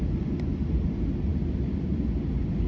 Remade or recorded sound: recorded